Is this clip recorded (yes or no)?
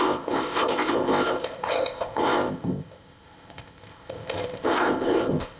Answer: no